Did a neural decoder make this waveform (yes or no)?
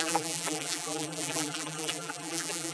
yes